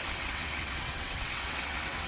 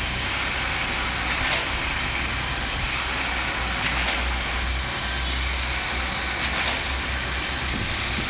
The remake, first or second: first